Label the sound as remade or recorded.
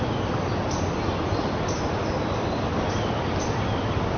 recorded